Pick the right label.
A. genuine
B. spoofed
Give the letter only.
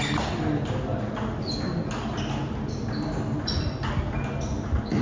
A